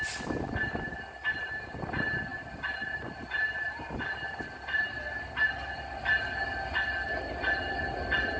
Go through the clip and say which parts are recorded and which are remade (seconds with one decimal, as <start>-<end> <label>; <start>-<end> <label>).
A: 0.0-8.4 recorded